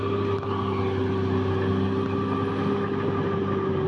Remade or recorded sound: recorded